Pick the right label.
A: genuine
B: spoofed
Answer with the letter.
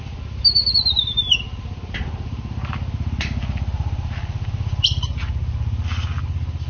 A